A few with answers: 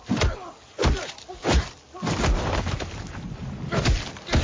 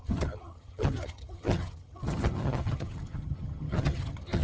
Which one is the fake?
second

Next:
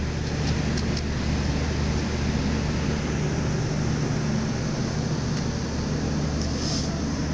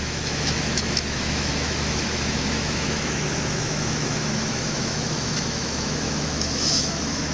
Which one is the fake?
second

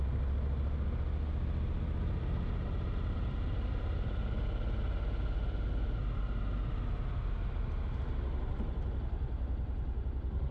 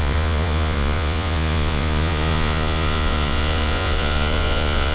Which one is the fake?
second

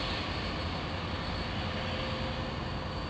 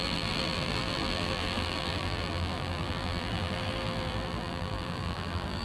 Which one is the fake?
second